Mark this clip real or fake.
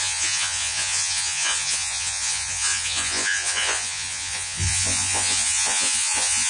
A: fake